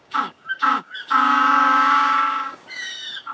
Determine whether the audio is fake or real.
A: fake